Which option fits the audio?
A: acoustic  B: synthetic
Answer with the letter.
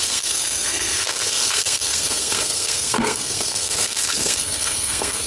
B